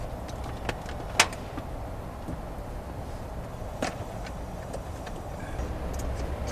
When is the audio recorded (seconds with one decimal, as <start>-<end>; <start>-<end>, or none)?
0.0-3.5; 5.7-6.5